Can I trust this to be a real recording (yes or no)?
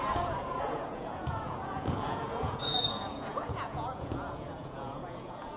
no